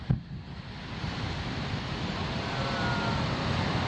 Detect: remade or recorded recorded